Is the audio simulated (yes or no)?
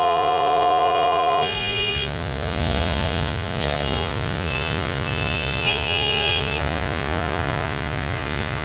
yes